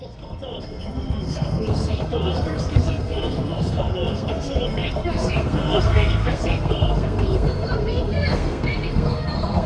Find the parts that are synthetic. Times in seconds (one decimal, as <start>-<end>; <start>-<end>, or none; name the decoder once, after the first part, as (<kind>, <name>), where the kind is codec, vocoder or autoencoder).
0.0-9.7 (codec, SNAC)

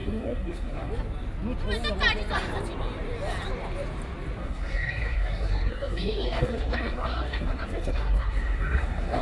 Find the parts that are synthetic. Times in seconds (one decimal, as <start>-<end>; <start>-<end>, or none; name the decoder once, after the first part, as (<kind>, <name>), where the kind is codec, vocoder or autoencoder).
0.0-0.9 (codec, SNAC); 4.4-9.2

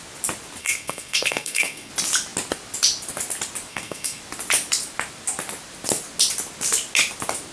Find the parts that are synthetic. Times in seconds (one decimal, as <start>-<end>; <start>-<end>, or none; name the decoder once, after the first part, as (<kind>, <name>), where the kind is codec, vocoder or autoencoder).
0.6-1.9 (codec, SNAC); 3.7-4.2

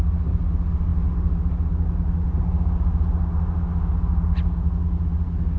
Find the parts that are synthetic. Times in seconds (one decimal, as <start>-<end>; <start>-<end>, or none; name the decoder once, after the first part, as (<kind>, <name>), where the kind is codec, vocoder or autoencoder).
none

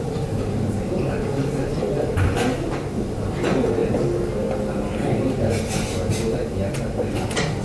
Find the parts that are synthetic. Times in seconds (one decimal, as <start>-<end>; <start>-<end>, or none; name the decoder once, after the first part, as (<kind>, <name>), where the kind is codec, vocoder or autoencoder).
none

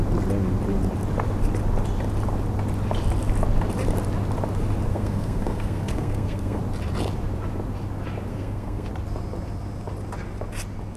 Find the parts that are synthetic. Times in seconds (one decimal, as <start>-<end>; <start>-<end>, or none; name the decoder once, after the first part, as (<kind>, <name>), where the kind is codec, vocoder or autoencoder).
4.9-6.6 (codec, SNAC); 8.3-8.9

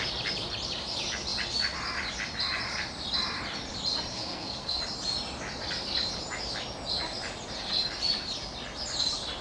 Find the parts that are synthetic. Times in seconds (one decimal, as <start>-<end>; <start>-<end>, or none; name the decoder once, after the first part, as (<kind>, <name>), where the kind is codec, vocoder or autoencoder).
4.1-4.8 (codec, SNAC)